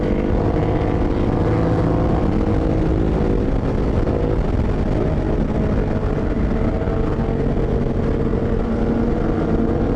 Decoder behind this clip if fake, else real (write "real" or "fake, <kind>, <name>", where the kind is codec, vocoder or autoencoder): real